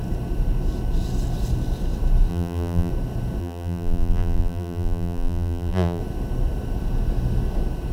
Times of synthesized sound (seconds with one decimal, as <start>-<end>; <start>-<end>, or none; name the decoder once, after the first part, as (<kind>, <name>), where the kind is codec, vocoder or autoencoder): 2.3-2.9 (vocoder, BigVGAN v2); 3.4-6.0